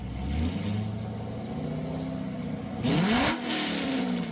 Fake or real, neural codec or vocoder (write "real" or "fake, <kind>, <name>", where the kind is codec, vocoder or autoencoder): real